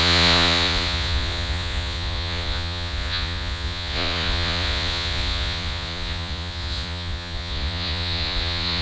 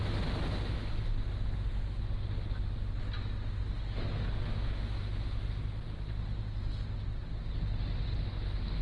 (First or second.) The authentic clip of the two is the second